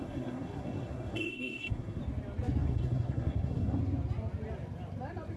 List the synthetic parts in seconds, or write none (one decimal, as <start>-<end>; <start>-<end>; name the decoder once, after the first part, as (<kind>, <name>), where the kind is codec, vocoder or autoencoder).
0.0-2.0 (codec, SNAC); 2.6-3.8